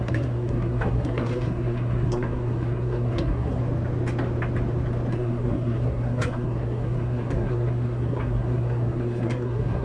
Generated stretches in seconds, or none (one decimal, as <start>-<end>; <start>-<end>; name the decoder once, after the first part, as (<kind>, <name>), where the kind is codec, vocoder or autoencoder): 0.0-3.6 (codec, SNAC); 5.1-9.8